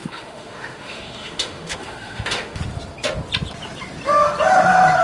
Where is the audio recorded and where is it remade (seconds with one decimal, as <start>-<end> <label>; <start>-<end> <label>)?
0.0-2.6 remade; 2.6-5.0 recorded